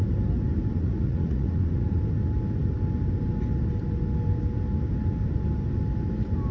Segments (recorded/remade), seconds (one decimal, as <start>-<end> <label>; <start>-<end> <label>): 0.0-0.7 recorded; 0.7-2.0 remade; 2.0-6.5 recorded